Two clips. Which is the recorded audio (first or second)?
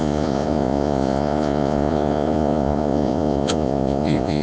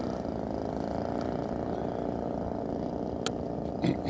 second